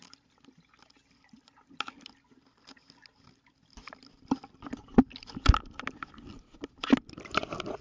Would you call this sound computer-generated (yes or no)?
no